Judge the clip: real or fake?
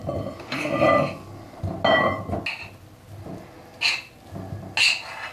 real